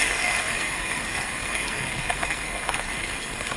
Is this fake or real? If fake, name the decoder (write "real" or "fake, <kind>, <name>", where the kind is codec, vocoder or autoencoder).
fake, codec, SNAC